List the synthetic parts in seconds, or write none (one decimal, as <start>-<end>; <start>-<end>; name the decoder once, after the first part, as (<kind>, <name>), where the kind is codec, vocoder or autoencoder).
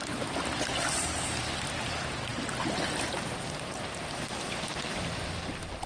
none